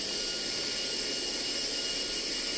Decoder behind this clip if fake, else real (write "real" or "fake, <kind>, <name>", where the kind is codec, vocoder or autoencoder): real